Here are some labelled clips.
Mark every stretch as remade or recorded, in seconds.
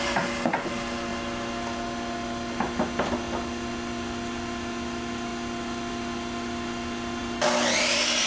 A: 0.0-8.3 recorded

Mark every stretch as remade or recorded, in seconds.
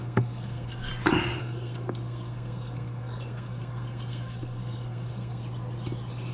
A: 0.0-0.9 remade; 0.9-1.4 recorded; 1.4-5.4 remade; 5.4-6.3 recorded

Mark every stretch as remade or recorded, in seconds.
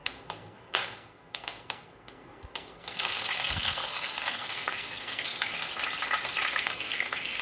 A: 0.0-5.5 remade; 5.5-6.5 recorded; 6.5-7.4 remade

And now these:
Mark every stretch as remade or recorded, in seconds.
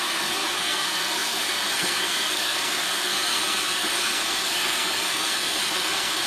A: 0.0-6.3 remade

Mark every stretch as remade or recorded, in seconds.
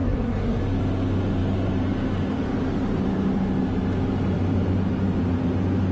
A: 0.0-0.6 remade; 0.6-5.9 recorded